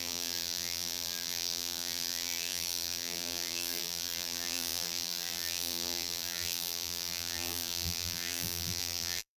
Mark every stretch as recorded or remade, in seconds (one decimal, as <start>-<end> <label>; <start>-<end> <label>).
0.0-9.4 remade